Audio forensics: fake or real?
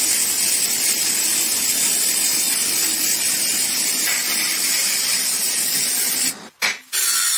real